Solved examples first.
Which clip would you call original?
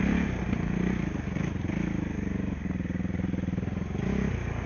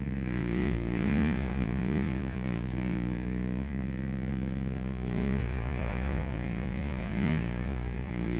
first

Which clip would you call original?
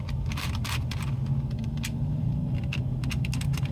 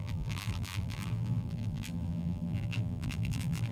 first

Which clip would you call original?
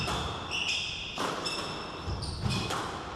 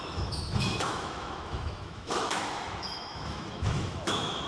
first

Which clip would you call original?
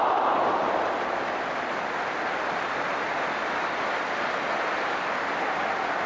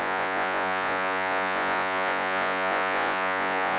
first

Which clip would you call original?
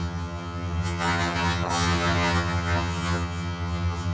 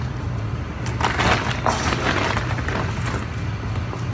second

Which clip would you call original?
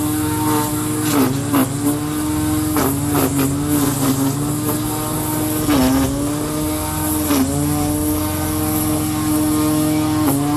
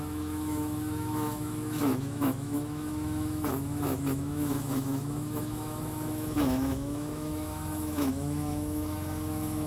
first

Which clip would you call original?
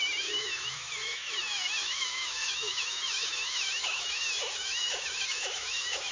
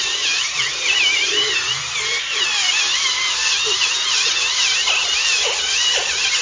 second